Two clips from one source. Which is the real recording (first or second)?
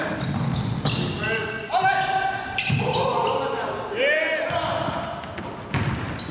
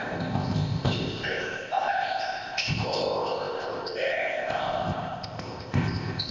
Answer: first